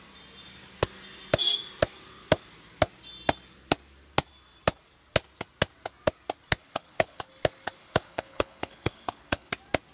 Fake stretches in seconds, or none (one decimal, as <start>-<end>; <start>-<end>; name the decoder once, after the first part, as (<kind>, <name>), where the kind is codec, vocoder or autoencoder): 6.6-7.3 (codec, HILCodec); 7.8-9.5